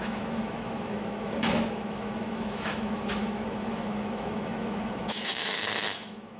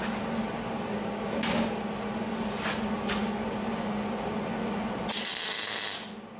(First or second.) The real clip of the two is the second